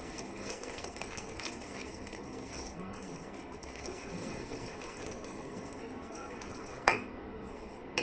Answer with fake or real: fake